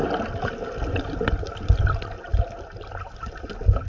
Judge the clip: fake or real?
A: real